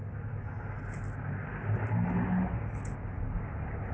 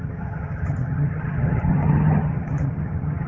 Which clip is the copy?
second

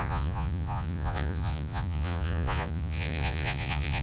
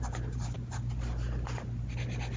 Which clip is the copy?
first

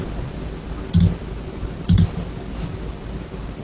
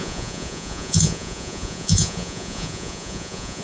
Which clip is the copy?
second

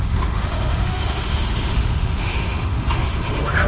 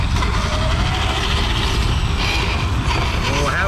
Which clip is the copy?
first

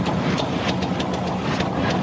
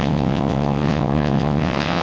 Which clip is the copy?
second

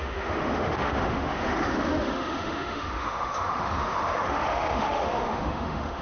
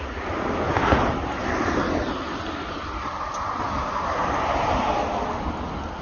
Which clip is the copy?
first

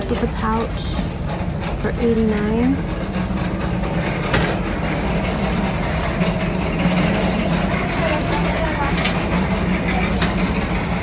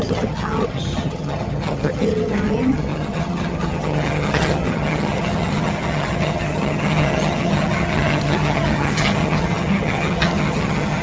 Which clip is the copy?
second